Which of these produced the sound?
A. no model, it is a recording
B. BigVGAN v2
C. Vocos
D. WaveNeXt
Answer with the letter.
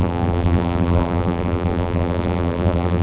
B